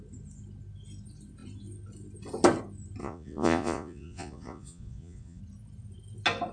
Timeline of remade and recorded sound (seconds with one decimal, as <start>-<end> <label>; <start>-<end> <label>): 0.0-3.0 recorded; 3.0-5.4 remade; 5.4-6.5 recorded